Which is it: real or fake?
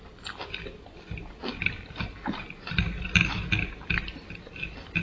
real